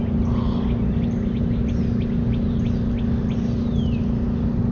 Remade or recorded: recorded